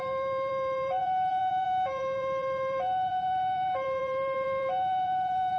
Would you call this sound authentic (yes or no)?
no